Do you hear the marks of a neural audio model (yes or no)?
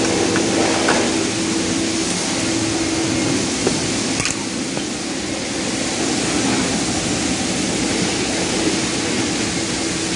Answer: no